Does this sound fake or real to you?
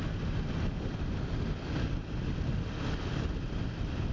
real